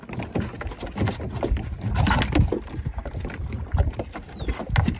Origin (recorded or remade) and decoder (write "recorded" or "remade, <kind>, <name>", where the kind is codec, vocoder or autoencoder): recorded